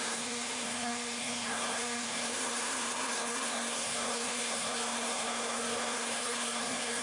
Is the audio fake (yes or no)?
yes